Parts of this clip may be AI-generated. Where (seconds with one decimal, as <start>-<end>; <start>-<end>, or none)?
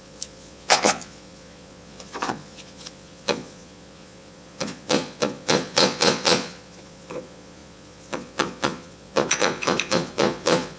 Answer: 0.0-10.8